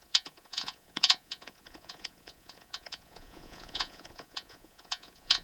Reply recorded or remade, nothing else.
remade